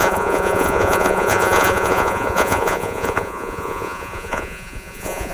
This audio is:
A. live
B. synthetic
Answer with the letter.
B